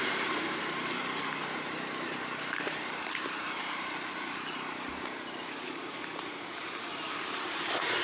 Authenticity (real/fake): fake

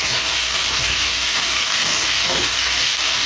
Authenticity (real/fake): fake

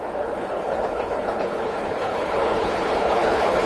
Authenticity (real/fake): fake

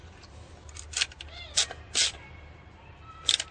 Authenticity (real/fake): real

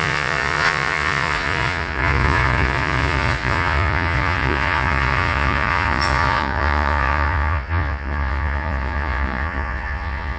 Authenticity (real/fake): fake